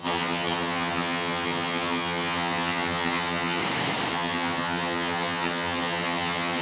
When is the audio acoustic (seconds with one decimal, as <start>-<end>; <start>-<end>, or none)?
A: 3.6-4.1